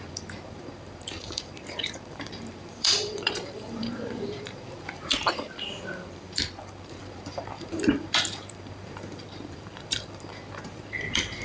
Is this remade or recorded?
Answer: remade